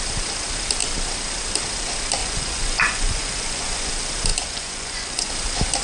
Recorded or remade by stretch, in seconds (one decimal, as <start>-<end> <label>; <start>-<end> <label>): 0.0-2.2 recorded; 2.2-3.9 remade; 3.9-4.3 recorded; 4.3-5.3 remade; 5.3-5.8 recorded